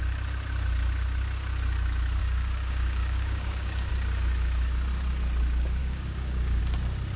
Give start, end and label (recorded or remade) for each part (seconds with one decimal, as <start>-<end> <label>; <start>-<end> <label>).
0.0-2.2 recorded; 2.2-3.9 remade; 3.9-5.8 recorded; 5.8-6.6 remade; 6.6-7.2 recorded